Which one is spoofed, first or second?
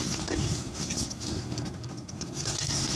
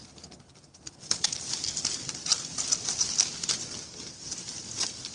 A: first